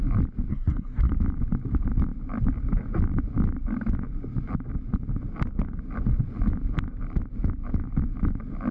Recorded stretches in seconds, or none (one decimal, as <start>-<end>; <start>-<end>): 0.0-0.5; 1.1-8.7